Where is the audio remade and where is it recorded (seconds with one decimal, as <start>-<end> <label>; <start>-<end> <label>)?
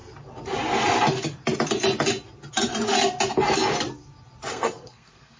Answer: 0.0-4.5 recorded; 4.5-5.4 remade